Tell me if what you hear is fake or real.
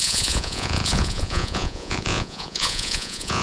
fake